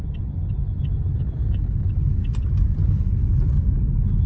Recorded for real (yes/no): yes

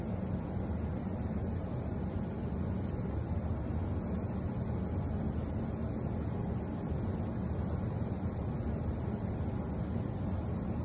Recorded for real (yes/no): yes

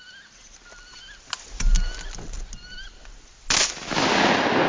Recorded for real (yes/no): yes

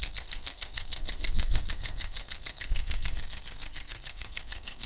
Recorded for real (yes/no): no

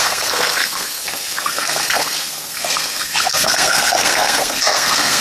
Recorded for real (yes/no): no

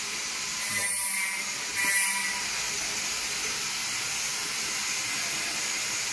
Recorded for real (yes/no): yes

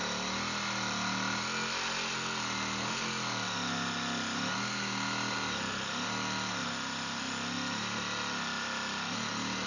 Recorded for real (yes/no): yes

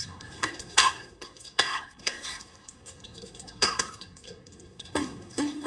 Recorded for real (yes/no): no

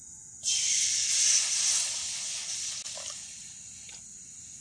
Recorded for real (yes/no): yes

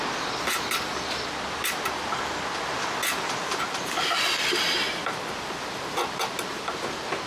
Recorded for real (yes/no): yes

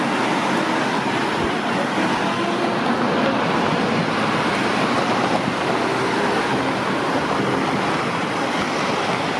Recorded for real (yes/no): yes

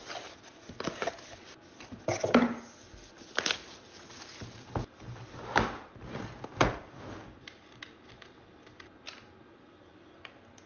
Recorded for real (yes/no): yes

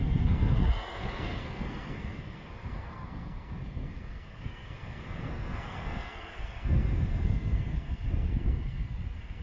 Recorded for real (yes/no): no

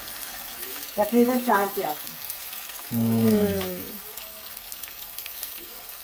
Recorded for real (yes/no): no